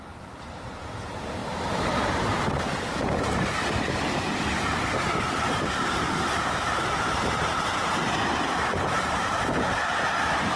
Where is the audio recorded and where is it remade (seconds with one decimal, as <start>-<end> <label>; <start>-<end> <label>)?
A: 0.0-10.6 remade